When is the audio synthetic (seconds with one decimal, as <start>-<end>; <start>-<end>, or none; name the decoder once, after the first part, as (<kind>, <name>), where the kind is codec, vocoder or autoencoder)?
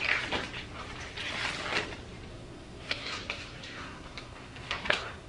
2.3-5.3 (codec, SNAC)